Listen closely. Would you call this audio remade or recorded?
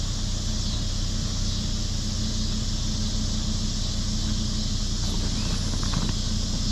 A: recorded